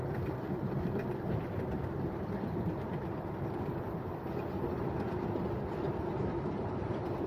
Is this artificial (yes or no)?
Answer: yes